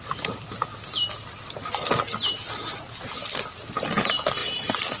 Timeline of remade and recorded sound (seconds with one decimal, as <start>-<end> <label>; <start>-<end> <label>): 0.0-4.4 recorded; 4.4-5.0 remade